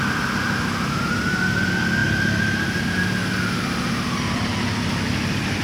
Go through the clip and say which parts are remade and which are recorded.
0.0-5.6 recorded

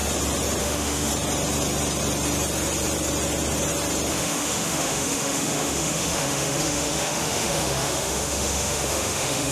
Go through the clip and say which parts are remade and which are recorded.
0.0-0.6 recorded; 0.6-1.1 remade; 1.1-4.1 recorded; 4.1-9.5 remade

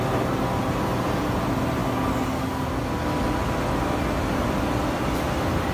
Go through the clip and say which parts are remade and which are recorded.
0.0-5.7 recorded